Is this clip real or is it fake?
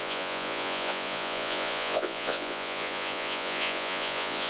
fake